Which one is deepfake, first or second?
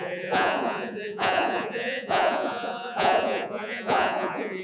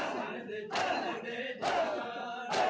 first